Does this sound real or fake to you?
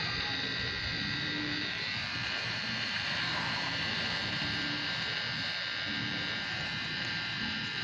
fake